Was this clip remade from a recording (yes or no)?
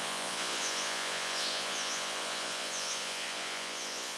yes